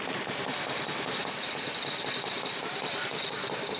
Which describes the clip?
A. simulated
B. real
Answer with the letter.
B